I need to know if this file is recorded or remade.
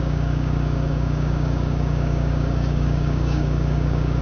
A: remade